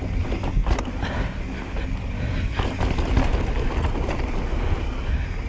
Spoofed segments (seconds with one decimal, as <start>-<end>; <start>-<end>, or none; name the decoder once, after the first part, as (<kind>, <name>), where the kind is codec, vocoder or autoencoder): none